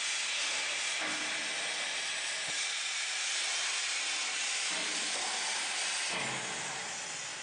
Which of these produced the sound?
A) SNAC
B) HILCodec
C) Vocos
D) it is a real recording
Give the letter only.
D